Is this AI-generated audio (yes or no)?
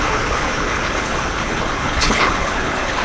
yes